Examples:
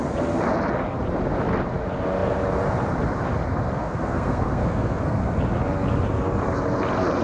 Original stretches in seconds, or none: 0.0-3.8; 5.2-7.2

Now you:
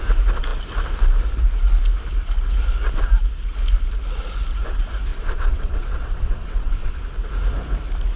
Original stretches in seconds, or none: 0.0-5.1; 7.0-8.2

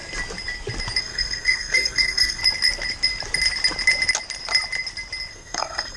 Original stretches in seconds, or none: 0.0-1.0; 2.4-5.3

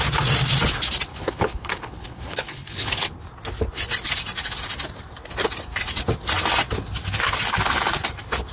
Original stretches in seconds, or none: 0.0-1.1; 3.1-8.5